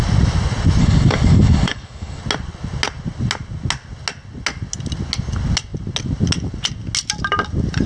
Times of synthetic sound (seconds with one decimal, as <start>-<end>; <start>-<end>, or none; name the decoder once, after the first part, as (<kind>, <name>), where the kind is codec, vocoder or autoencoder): 0.8-2.2 (codec, DAC)